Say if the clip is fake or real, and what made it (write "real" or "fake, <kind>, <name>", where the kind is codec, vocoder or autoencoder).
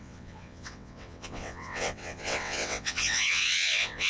fake, vocoder, WaveNeXt